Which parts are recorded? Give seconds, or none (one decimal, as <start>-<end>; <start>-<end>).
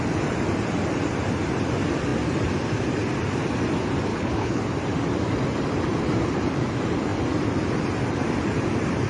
0.0-4.1; 4.6-9.1